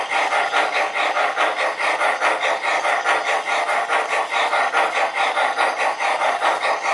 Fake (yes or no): no